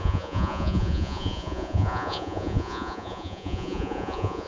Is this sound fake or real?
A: fake